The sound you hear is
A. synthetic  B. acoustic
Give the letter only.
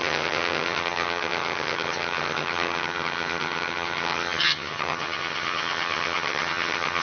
A